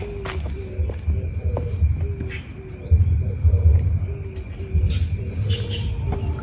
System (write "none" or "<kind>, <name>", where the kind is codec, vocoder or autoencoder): none